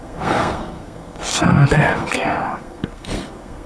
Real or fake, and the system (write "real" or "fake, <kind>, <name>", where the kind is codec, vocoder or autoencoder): fake, codec, SNAC